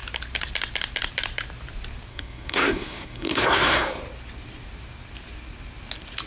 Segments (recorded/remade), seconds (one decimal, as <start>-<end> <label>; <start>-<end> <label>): 0.0-2.1 recorded; 2.1-4.0 remade; 4.0-6.3 recorded